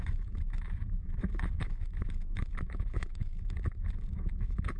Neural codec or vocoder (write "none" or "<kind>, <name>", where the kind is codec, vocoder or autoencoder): autoencoder, DAC-VAE